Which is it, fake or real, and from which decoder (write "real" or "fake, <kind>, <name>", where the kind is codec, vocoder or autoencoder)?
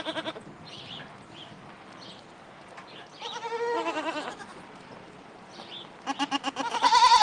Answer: real